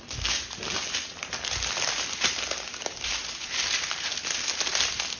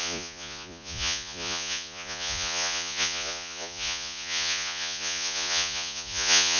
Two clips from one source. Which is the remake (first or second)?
second